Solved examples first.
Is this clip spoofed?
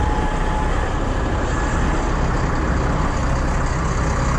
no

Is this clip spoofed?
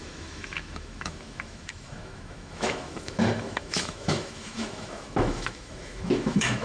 yes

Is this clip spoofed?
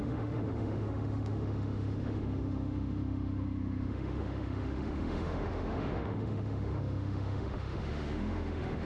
yes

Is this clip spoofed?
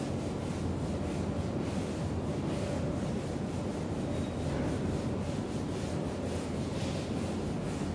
no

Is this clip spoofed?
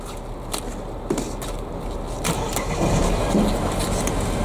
no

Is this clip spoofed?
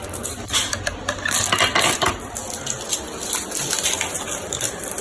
no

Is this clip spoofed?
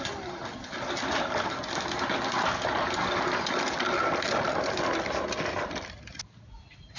no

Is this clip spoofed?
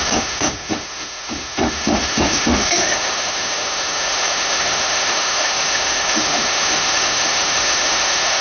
yes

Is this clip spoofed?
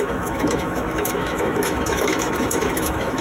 yes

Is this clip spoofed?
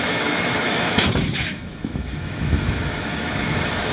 yes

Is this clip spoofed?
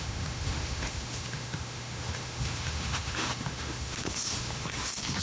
yes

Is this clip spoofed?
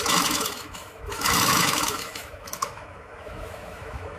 yes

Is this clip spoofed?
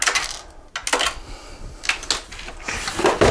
no